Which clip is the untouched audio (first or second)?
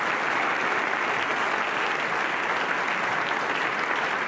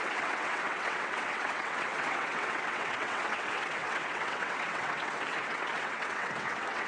first